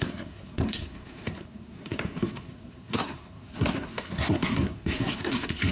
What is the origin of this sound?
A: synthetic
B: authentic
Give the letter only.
A